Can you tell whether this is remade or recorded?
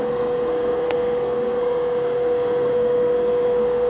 remade